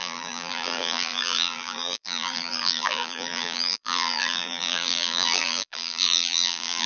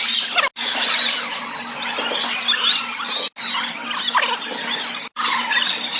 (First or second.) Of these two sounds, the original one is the second